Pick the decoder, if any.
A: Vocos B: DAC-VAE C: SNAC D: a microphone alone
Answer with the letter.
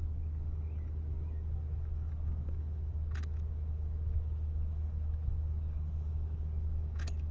B